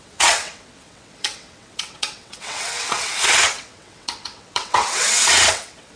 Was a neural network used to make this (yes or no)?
yes